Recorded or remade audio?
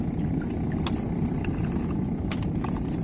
recorded